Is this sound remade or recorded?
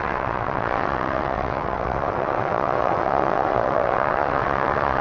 remade